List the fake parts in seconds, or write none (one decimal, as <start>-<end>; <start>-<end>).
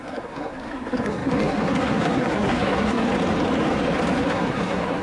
0.0-3.1; 4.2-5.0